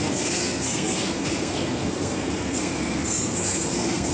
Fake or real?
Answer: fake